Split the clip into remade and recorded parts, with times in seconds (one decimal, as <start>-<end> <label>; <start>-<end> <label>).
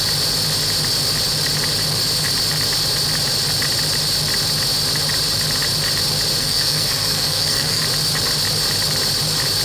0.0-6.4 recorded; 6.4-7.8 remade; 7.8-9.6 recorded